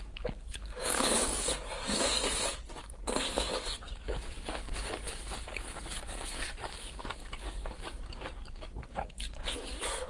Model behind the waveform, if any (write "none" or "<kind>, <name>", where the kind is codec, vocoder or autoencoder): codec, DAC